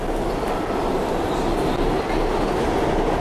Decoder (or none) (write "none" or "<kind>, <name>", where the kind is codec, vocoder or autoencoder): none